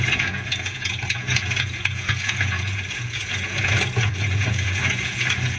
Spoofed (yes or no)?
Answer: yes